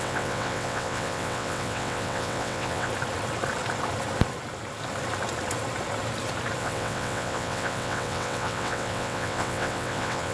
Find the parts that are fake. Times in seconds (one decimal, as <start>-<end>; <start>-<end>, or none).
0.0-2.9; 6.6-10.3